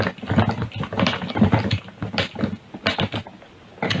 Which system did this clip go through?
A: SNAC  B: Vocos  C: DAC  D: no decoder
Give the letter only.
D